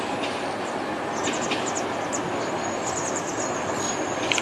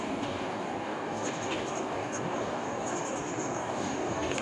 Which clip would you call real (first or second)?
first